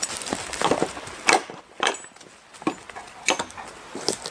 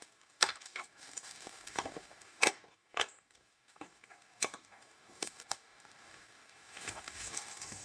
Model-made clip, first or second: second